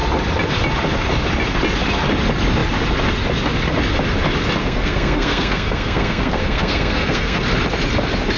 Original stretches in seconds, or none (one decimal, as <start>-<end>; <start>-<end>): 0.0-4.6; 7.4-8.4